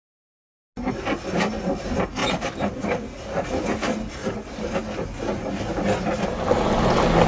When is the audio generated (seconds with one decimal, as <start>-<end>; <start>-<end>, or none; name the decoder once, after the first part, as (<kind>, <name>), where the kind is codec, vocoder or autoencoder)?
none